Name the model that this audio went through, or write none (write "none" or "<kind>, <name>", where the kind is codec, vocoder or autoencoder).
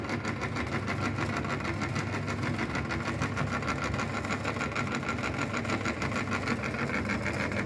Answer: none